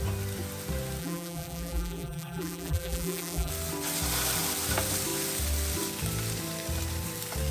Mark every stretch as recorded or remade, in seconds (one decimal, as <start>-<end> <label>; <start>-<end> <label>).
0.0-1.0 recorded; 1.0-3.5 remade; 3.5-7.5 recorded